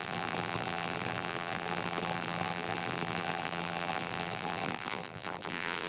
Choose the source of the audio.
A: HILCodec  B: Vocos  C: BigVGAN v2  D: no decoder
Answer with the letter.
C